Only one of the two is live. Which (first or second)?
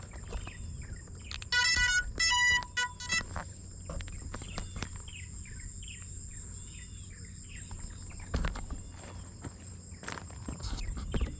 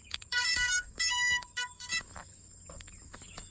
first